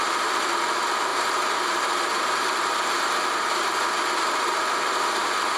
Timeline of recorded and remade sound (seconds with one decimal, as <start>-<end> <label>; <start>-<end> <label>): 0.0-1.1 recorded; 1.1-4.5 remade; 4.5-5.6 recorded